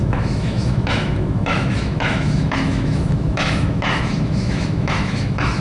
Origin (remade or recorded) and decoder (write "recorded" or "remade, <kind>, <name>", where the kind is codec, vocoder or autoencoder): remade, autoencoder, DAC-VAE